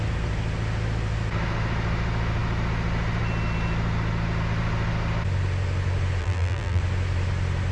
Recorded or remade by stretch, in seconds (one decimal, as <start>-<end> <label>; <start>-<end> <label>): 0.0-6.2 recorded; 6.2-6.8 remade; 6.8-7.7 recorded